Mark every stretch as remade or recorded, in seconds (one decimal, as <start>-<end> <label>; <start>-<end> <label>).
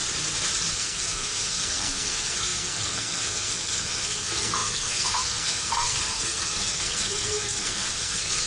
0.0-0.7 recorded; 0.7-8.5 remade